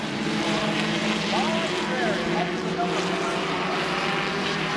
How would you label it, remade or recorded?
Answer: recorded